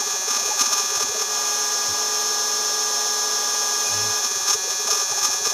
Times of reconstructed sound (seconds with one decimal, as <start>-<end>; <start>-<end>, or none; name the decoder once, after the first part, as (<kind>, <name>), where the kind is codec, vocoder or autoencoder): 0.0-1.3 (vocoder, Vocos); 4.2-5.5